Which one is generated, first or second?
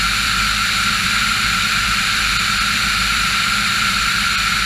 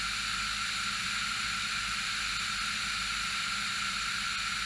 first